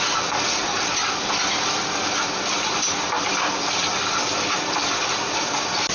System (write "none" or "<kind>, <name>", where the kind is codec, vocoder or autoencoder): none